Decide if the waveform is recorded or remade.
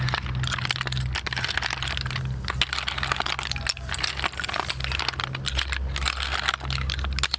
recorded